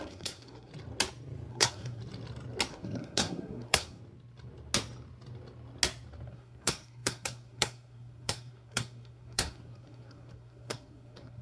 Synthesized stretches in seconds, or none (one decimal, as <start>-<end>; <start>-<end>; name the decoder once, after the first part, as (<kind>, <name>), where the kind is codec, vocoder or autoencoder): 0.0-0.7 (codec, SNAC); 1.5-2.0; 2.7-4.0; 6.3-11.4